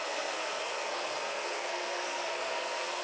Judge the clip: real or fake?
fake